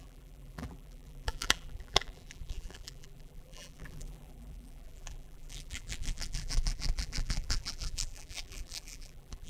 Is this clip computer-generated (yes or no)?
yes